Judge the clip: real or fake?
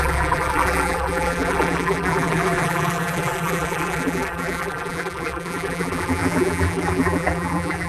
fake